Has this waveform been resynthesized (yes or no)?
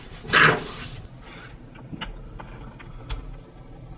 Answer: no